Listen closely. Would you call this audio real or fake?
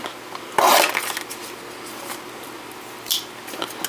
real